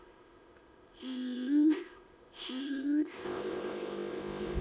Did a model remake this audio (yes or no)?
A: yes